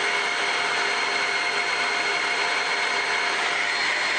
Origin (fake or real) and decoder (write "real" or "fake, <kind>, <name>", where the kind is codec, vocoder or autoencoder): real